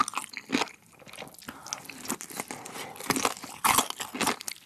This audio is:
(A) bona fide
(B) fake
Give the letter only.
A